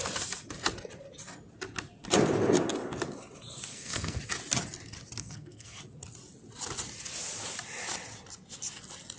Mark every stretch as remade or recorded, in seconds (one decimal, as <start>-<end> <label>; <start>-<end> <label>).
0.0-3.7 recorded; 3.7-4.2 remade; 4.2-5.2 recorded; 5.2-5.8 remade; 5.8-9.2 recorded